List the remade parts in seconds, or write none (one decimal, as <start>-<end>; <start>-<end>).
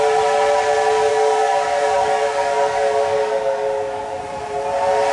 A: 1.1-4.2